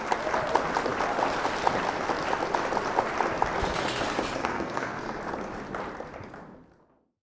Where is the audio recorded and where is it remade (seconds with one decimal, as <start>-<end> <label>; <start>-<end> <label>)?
0.0-4.4 recorded; 4.4-5.2 remade; 5.2-7.2 recorded